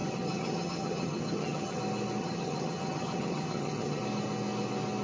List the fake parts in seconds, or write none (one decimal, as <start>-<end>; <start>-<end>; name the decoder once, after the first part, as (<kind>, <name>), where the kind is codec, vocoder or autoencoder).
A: 0.0-1.8 (vocoder, HiFi-GAN); 2.2-4.0